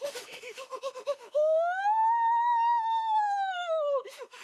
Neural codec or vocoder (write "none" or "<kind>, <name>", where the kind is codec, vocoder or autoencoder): autoencoder, DAC-VAE